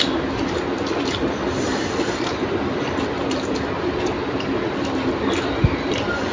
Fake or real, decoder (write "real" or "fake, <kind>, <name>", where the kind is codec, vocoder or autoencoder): real